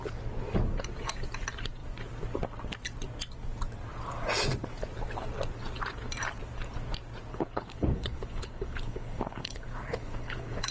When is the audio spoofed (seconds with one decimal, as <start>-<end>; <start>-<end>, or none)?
7.3-10.7

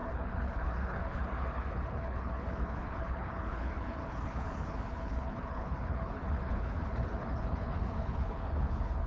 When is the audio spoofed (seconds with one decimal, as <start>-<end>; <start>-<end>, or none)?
0.0-9.1

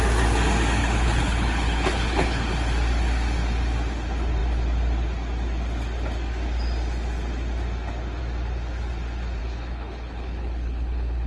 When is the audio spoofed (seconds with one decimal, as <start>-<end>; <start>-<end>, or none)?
0.8-2.5; 9.4-11.3

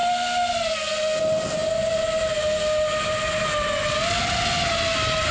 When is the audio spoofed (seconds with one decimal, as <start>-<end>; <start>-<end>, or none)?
none

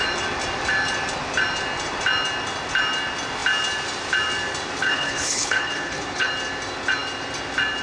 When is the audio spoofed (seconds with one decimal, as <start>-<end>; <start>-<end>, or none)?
4.8-6.3

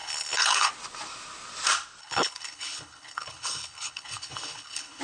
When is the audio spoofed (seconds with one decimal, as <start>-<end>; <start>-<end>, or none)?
0.0-0.7; 2.0-5.0

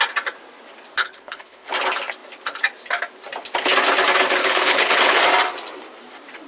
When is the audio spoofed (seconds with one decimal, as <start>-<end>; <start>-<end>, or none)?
1.0-1.7; 4.4-5.2

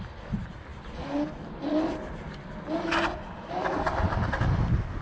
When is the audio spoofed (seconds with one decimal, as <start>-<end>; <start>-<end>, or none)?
none